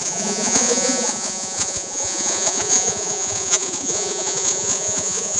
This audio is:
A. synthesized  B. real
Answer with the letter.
A